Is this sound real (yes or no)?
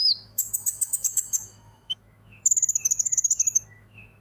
no